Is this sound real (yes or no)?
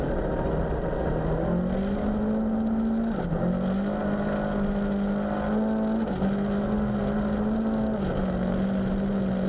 yes